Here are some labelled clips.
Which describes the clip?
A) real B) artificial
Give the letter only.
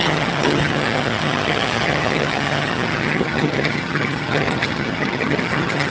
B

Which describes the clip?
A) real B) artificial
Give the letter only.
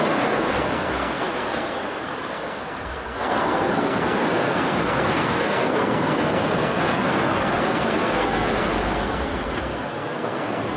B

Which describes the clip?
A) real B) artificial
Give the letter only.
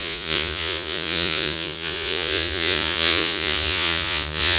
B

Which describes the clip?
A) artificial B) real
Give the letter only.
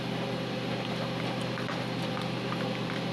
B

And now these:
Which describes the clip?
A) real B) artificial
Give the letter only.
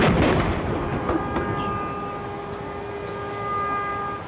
A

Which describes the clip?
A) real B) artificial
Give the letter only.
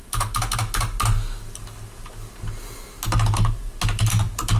A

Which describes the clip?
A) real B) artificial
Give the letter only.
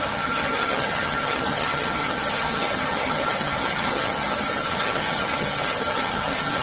B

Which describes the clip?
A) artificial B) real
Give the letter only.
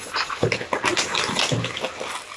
B